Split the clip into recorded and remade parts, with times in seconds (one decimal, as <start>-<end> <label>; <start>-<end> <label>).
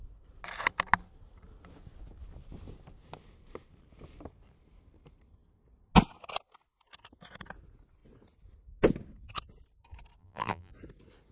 0.0-10.2 recorded; 10.2-10.7 remade; 10.7-11.3 recorded